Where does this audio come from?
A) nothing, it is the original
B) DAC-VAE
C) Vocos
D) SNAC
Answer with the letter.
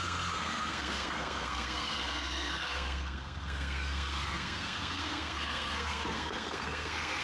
D